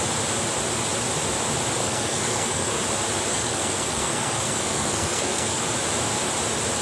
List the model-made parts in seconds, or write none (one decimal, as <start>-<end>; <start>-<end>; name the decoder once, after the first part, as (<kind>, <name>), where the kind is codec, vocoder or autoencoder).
1.8-2.8 (codec, SNAC); 3.3-5.6